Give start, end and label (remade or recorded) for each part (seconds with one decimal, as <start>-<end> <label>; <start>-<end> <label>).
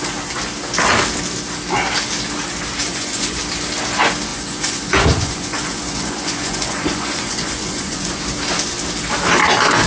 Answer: 0.0-2.8 recorded; 2.8-3.4 remade; 3.4-4.3 recorded; 4.3-8.2 remade; 8.2-9.9 recorded